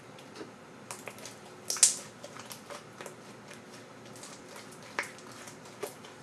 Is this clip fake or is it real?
real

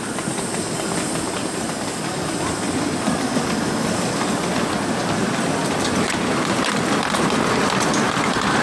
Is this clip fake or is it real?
real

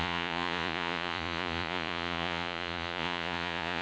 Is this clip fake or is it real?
fake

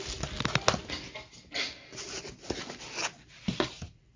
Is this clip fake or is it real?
real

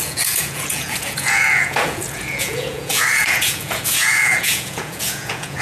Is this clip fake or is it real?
fake